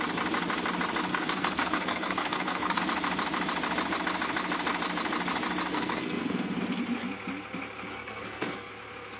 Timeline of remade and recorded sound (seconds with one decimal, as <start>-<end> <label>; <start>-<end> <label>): 0.0-1.1 recorded; 1.1-2.8 remade; 2.8-5.7 recorded; 5.7-6.6 remade; 6.6-7.9 recorded; 7.9-8.7 remade; 8.7-9.2 recorded